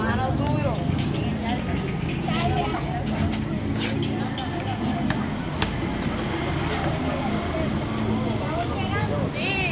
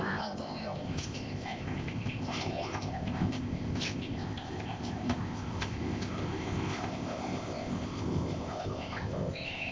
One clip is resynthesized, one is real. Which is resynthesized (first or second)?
second